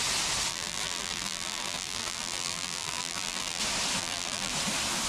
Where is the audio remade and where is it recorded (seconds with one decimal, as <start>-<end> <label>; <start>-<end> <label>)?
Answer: 0.0-0.5 recorded; 0.5-3.6 remade; 3.6-4.0 recorded; 4.0-4.5 remade; 4.5-5.1 recorded